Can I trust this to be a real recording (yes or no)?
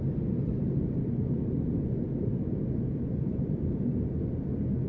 yes